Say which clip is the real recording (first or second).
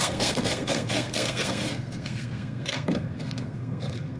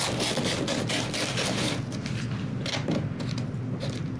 second